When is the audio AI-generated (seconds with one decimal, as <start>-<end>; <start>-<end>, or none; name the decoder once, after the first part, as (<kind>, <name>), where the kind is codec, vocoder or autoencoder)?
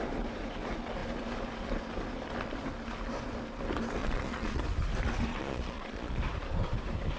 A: 4.0-4.6 (vocoder, Vocos); 5.3-6.2